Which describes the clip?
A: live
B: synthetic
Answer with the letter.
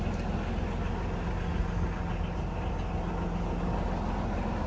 A